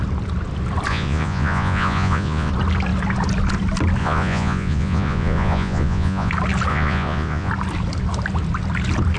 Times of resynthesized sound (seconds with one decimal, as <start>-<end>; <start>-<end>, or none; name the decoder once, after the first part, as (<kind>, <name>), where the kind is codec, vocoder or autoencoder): 0.9-2.5 (vocoder, Vocos); 4.0-6.3; 6.7-7.5